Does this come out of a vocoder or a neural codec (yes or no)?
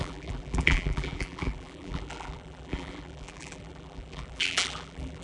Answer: yes